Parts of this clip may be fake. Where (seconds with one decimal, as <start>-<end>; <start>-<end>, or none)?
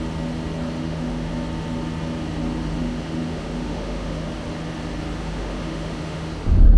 0.8-1.3; 2.8-4.3; 5.2-6.3